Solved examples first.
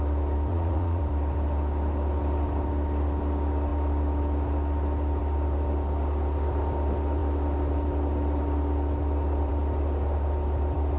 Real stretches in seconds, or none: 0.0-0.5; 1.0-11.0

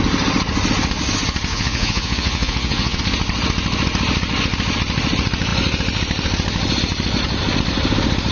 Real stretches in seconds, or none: 0.0-1.5; 3.0-8.3

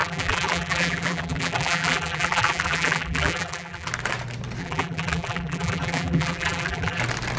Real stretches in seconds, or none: 3.9-4.6; 7.0-7.4

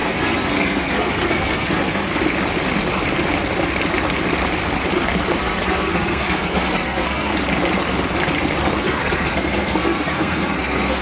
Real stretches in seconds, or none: 2.1-5.4; 7.3-8.8